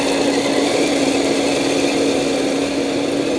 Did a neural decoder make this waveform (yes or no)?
no